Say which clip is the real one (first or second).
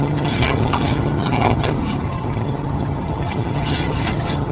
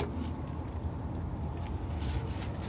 second